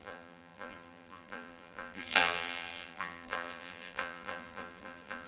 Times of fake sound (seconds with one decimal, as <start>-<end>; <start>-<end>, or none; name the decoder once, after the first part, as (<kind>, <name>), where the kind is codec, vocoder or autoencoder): 0.0-5.3 (vocoder, BigVGAN v2)